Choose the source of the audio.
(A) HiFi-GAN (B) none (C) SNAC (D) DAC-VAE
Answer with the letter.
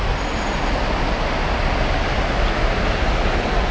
B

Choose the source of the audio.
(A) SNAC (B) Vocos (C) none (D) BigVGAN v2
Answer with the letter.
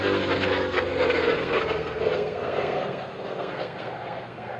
A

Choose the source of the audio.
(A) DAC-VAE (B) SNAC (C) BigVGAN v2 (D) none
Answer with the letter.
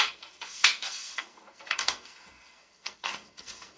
B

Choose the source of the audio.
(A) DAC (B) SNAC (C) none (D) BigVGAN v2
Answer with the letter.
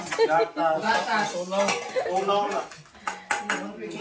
C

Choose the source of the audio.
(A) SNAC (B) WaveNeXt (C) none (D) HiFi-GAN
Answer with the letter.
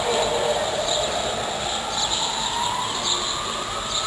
C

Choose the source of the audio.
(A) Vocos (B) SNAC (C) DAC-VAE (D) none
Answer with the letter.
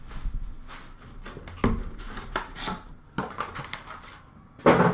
D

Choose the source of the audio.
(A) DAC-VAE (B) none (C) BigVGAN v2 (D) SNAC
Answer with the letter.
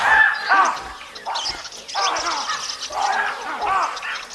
B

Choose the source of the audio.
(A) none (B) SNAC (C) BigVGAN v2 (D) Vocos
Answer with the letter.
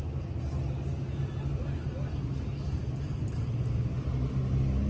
A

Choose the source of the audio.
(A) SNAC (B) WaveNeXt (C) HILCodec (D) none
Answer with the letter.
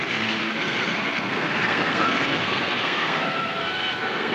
A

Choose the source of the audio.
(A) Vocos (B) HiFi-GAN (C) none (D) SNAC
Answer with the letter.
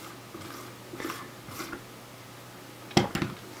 C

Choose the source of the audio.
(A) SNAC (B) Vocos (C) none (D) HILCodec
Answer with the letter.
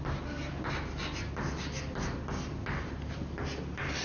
C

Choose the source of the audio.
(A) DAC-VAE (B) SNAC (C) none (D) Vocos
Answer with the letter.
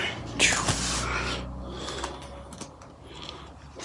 C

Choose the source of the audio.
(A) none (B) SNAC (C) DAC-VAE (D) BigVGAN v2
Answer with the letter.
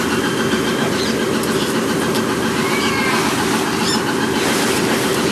A